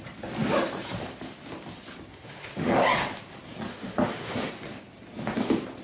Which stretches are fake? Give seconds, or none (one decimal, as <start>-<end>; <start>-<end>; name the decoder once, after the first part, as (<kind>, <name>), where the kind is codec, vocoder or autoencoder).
2.1-2.7 (autoencoder, DAC-VAE); 3.7-4.5